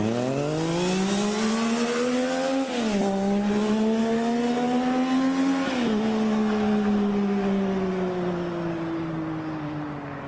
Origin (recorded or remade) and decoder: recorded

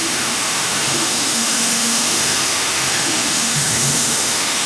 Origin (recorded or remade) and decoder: remade, autoencoder, DAC-VAE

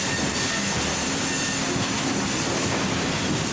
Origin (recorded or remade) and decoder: recorded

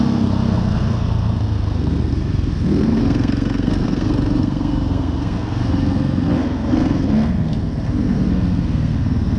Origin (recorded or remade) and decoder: remade, codec, SNAC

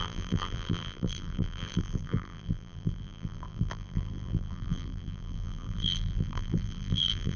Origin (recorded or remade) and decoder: remade, vocoder, BigVGAN v2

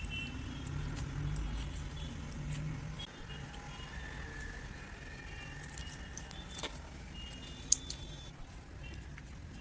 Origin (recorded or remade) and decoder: recorded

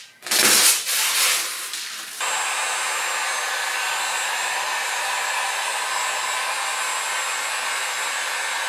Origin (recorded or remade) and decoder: recorded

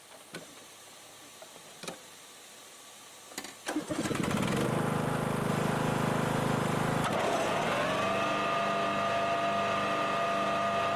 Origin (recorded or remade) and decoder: recorded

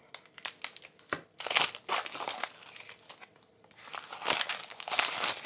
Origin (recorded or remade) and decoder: recorded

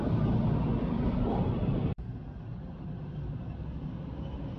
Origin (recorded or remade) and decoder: recorded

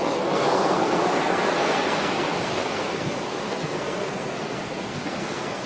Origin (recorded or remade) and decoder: remade, codec, SNAC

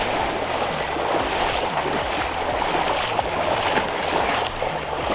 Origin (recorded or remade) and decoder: recorded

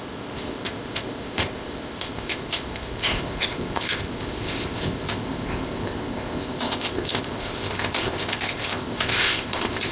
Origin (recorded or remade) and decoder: remade, codec, ZipCodec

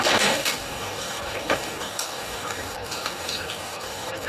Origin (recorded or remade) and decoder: remade, codec, DAC